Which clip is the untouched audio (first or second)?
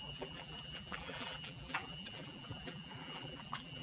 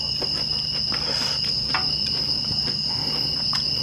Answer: second